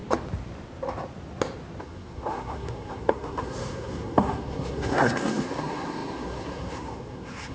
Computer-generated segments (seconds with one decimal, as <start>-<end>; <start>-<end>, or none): 1.8-7.5